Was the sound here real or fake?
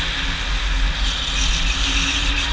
real